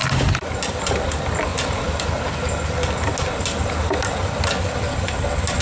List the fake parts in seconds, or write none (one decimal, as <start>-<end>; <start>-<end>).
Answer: none